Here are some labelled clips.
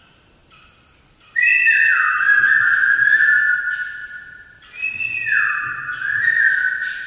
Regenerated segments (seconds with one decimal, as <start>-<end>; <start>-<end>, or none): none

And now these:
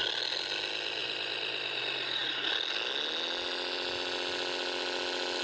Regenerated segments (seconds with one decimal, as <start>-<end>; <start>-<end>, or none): 1.0-1.8

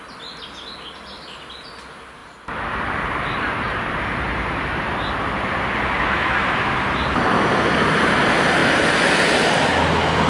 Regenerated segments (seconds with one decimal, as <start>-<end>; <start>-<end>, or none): 2.2-7.3

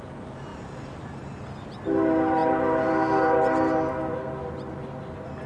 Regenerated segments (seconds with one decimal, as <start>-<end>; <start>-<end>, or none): 0.5-1.0

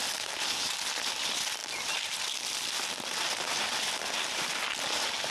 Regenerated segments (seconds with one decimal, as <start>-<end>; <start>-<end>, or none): none